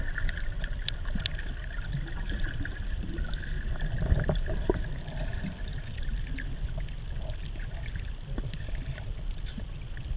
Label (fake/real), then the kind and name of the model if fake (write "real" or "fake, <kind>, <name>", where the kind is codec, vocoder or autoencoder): real